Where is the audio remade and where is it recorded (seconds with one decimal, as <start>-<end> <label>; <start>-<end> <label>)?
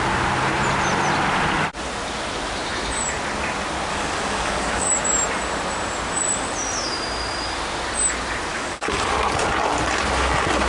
0.0-3.9 recorded; 3.9-4.9 remade; 4.9-8.5 recorded; 8.5-9.1 remade; 9.1-10.7 recorded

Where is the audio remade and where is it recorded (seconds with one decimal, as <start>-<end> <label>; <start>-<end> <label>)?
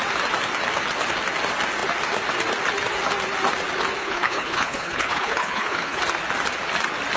0.0-4.0 recorded; 4.0-6.0 remade; 6.0-7.2 recorded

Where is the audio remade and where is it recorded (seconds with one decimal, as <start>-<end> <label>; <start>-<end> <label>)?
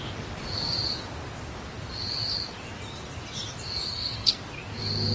0.0-3.9 recorded; 3.9-4.4 remade; 4.4-5.1 recorded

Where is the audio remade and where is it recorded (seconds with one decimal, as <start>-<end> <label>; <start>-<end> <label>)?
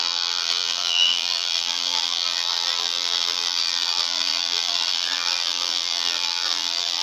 0.0-7.0 remade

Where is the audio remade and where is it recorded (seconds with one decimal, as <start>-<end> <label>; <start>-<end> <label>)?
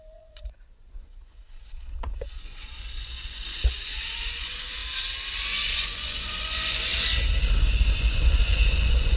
0.0-4.8 remade; 4.8-5.4 recorded; 5.4-6.9 remade; 6.9-7.7 recorded; 7.7-9.2 remade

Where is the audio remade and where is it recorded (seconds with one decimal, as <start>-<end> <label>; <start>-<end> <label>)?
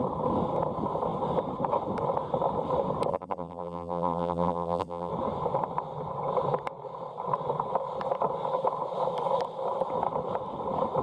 0.0-3.1 recorded; 3.1-5.1 remade; 5.1-11.0 recorded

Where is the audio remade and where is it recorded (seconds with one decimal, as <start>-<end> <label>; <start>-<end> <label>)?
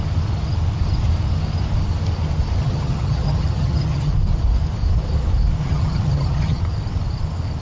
0.0-2.6 recorded; 2.6-4.1 remade; 4.1-5.6 recorded; 5.6-6.6 remade; 6.6-7.6 recorded